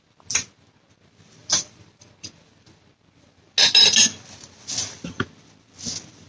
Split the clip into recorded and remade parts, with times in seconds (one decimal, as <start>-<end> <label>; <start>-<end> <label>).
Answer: 0.0-6.3 recorded